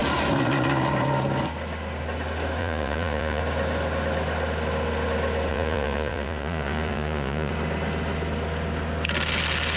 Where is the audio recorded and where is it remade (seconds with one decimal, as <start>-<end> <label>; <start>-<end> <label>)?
0.0-2.6 recorded; 2.6-3.4 remade; 3.4-5.5 recorded; 5.5-7.5 remade; 7.5-9.8 recorded